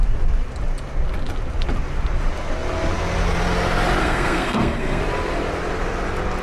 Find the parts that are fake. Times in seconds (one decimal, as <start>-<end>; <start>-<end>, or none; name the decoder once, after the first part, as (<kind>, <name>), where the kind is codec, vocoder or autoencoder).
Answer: 4.0-5.0 (codec, SNAC)